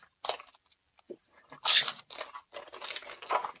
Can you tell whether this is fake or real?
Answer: real